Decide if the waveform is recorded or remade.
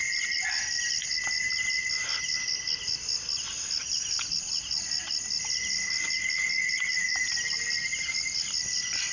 recorded